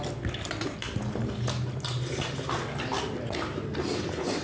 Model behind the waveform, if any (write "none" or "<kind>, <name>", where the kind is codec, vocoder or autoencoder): none